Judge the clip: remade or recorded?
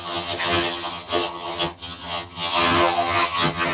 remade